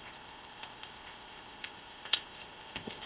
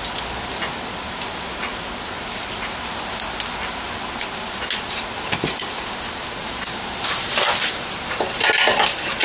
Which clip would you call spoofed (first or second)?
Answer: first